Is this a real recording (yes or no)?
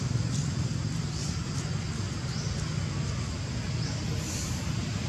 yes